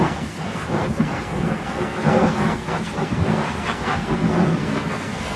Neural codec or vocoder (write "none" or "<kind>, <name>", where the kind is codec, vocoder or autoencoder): codec, SNAC